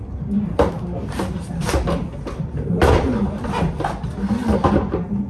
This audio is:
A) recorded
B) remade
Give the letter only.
A